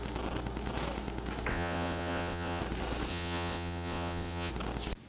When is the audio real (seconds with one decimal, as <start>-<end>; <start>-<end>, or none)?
0.0-1.5; 2.6-3.1; 4.5-5.1